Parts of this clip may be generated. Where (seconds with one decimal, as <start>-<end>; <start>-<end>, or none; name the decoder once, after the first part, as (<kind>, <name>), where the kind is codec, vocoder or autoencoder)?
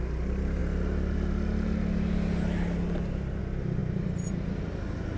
none